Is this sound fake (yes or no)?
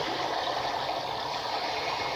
no